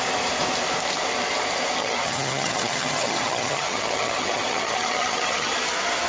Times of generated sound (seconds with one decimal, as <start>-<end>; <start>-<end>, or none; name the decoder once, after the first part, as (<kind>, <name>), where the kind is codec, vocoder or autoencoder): 1.8-5.5 (vocoder, HiFi-GAN)